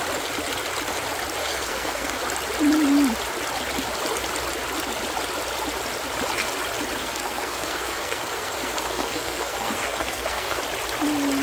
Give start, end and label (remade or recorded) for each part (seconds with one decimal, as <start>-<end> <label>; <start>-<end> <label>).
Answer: 0.0-1.4 recorded; 1.4-2.2 remade; 2.2-7.0 recorded; 7.0-10.6 remade; 10.6-11.4 recorded